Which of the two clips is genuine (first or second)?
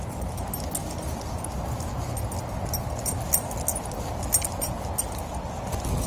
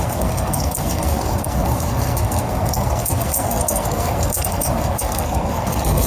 first